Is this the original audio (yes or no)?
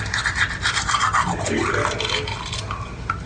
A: yes